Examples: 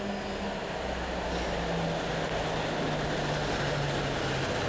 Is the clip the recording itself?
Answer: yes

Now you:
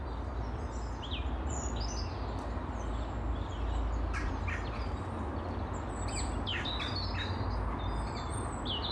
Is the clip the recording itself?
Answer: yes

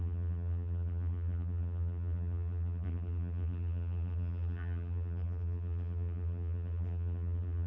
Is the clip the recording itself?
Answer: no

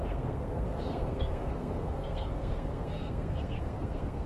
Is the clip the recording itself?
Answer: no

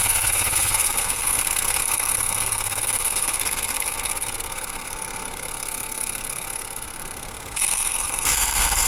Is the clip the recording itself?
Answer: no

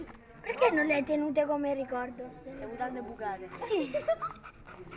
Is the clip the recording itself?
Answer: yes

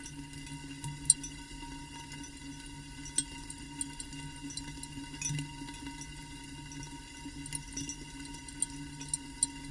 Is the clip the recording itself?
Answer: yes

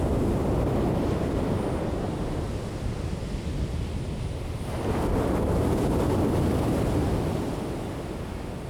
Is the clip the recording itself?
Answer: yes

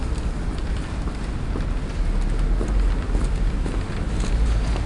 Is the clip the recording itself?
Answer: yes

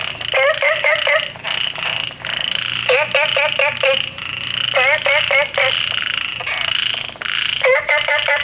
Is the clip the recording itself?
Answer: yes